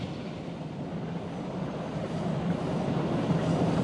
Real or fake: fake